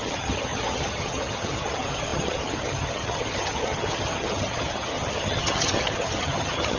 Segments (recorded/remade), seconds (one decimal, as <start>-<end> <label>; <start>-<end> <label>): 0.0-6.8 remade

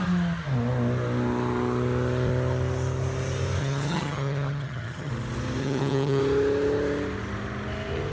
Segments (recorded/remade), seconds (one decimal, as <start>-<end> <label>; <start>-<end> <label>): 0.0-3.6 recorded; 3.6-5.1 remade; 5.1-5.6 recorded; 5.6-6.2 remade; 6.2-8.1 recorded

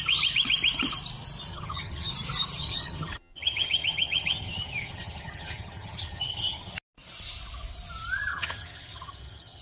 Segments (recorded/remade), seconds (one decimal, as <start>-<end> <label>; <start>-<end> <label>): 0.0-1.5 recorded; 1.5-2.1 remade; 2.1-2.6 recorded; 2.6-6.7 remade; 6.7-8.3 recorded; 8.3-9.6 remade

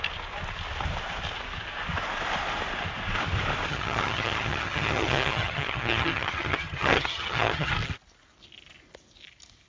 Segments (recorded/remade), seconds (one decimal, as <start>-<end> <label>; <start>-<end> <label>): 0.0-3.7 recorded; 3.7-7.7 remade; 7.7-9.7 recorded

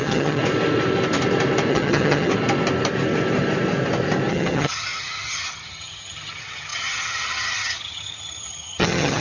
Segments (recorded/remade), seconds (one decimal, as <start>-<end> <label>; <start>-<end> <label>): 0.0-0.4 remade; 0.4-1.7 recorded; 1.7-2.3 remade; 2.3-4.3 recorded; 4.3-9.2 remade